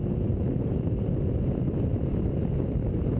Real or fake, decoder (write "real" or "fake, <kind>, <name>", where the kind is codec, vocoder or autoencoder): real